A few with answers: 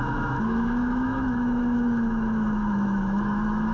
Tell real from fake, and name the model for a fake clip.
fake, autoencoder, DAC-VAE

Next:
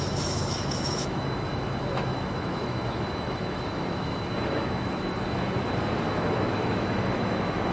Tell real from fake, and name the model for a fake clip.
fake, autoencoder, DAC-VAE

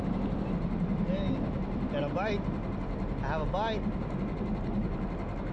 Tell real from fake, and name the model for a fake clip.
real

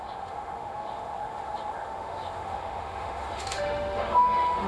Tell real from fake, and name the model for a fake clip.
fake, autoencoder, DAC-VAE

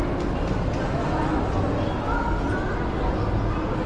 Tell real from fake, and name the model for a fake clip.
real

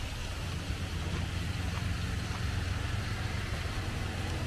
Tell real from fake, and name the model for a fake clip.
real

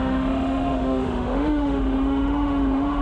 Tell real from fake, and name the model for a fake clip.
fake, autoencoder, DAC-VAE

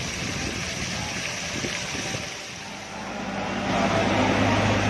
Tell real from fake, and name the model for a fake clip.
real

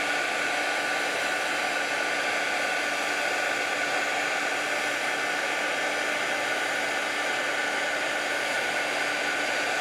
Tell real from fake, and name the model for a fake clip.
real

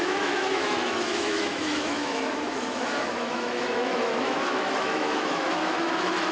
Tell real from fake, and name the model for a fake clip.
fake, autoencoder, DAC-VAE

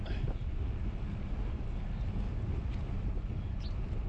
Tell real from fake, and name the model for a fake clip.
real